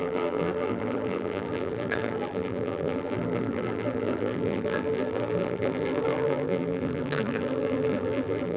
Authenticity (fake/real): fake